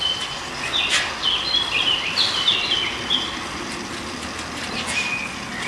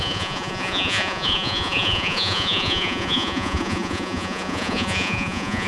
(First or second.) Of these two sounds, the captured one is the first